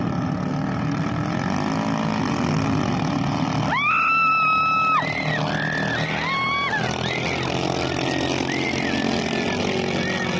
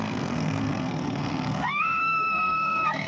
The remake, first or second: second